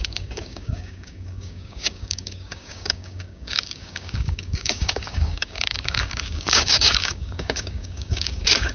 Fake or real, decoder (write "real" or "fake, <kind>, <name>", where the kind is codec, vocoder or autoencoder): fake, codec, DAC